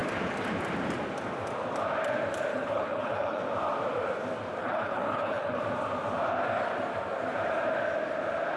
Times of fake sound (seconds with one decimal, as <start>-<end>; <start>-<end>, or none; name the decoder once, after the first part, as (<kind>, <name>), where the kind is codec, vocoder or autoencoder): 2.5-3.4 (codec, HILCodec); 4.6-5.6